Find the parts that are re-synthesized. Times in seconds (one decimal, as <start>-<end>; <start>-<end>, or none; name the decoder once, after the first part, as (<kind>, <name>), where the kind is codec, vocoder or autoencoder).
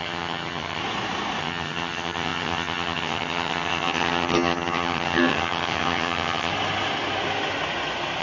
0.0-0.8 (vocoder, HiFi-GAN); 1.4-6.5